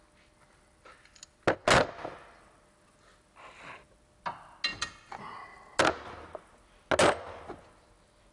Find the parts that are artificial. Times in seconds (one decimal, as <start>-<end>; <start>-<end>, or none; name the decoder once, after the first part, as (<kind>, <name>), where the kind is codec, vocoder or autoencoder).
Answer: none